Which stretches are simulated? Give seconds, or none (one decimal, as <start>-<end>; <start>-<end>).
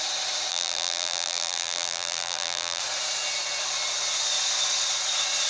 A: 0.5-2.8